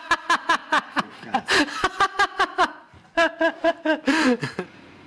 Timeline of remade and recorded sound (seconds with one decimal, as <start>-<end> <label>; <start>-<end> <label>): 0.0-5.1 recorded